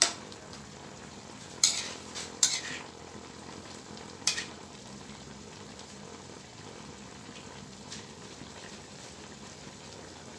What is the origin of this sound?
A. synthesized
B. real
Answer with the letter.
A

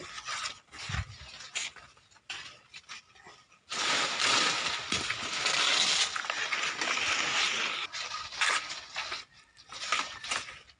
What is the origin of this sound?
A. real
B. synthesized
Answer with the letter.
A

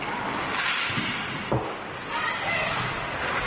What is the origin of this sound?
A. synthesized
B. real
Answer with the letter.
B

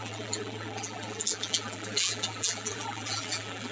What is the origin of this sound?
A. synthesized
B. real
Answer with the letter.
A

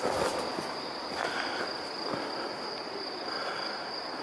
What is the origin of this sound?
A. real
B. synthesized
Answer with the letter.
B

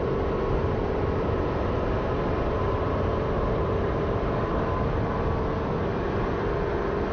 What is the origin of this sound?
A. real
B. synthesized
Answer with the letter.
B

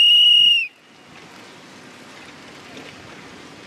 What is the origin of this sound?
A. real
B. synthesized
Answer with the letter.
A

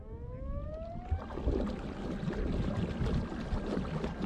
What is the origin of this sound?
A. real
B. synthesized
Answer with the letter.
A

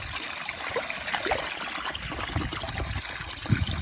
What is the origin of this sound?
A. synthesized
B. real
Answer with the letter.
B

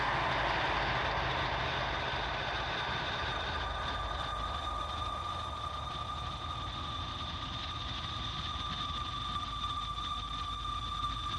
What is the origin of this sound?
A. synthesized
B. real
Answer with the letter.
B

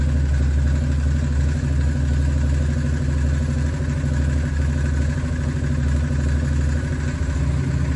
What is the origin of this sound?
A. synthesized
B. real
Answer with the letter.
B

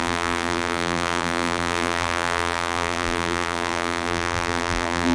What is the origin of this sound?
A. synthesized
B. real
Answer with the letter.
A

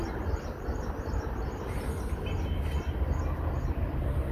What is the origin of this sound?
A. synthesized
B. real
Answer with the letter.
B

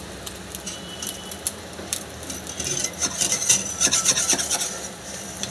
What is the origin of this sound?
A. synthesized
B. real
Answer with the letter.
A